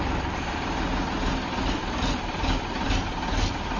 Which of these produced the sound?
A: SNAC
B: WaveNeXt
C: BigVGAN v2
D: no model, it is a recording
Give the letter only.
C